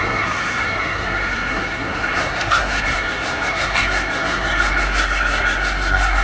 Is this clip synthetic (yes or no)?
yes